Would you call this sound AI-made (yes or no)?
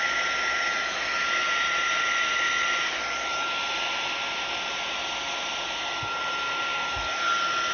no